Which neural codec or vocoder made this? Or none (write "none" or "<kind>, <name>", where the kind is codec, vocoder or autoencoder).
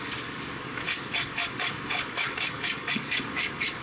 codec, DAC